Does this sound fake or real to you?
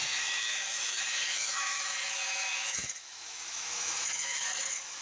fake